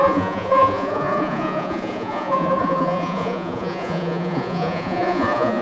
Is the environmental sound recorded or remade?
remade